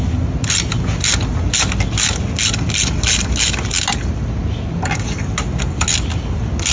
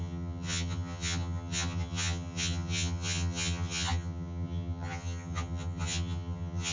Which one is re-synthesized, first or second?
second